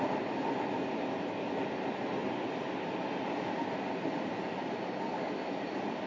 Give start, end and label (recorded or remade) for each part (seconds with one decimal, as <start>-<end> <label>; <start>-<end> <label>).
0.0-2.2 recorded; 2.2-6.1 remade